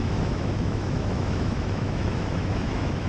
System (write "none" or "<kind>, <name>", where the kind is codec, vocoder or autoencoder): autoencoder, DAC-VAE